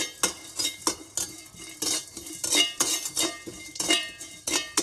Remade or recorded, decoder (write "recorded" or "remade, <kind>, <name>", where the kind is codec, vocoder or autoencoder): recorded